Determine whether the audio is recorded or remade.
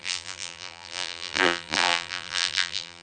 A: remade